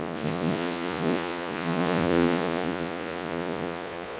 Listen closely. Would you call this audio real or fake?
fake